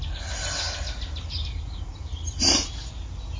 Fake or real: real